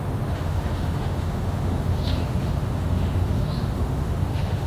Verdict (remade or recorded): remade